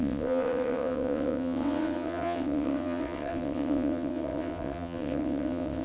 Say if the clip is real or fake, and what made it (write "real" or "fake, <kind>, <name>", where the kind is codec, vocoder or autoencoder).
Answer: fake, vocoder, WaveNeXt